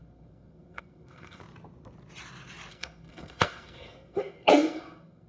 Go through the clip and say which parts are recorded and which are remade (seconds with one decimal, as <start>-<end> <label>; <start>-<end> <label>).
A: 0.0-1.4 remade; 1.4-2.7 recorded; 2.7-5.3 remade